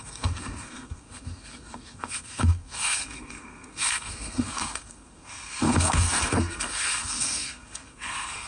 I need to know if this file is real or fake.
fake